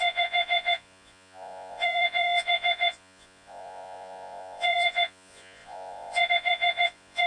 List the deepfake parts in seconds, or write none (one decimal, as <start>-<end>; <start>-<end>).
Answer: 0.0-7.3